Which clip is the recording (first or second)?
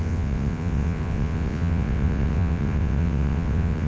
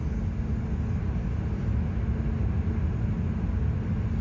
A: second